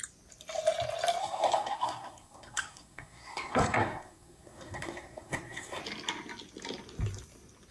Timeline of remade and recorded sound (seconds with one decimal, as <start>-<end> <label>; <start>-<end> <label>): 0.0-1.2 recorded; 1.2-5.8 remade; 5.8-7.7 recorded